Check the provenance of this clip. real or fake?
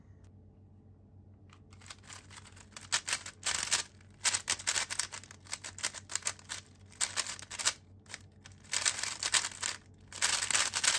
real